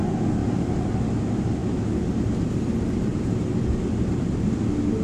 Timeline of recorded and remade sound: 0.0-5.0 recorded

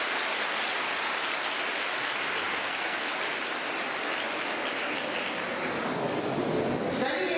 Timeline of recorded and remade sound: 0.0-2.5 recorded; 2.5-3.1 remade; 3.1-7.4 recorded

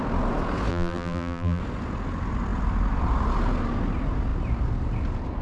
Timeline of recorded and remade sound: 0.0-0.7 recorded; 0.7-1.6 remade; 1.6-5.4 recorded